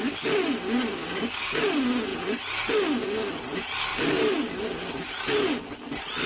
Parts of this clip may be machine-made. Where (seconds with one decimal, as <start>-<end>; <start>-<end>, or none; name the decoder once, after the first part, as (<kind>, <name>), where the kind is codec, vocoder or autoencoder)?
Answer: 1.0-1.6 (codec, DAC)